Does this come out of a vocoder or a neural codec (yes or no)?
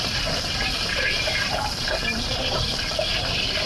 yes